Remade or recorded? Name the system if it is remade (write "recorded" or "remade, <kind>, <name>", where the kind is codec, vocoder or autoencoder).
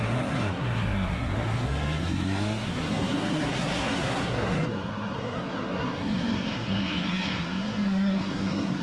remade, codec, SNAC